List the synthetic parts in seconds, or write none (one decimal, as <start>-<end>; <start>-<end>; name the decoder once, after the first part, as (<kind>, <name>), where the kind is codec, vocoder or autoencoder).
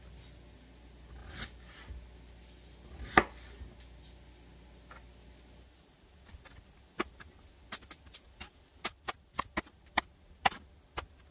none